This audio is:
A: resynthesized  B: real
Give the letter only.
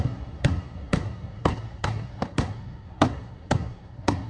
A